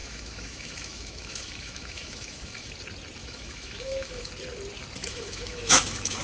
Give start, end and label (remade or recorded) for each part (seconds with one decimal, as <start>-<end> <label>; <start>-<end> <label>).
0.0-2.7 remade; 2.7-3.2 recorded; 3.2-4.3 remade; 4.3-5.0 recorded; 5.0-6.2 remade